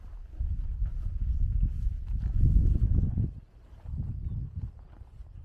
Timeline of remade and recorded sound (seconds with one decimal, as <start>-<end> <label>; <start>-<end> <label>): 0.0-5.4 recorded